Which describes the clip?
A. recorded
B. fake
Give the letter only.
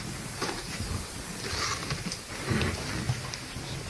A